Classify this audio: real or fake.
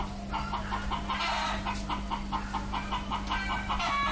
real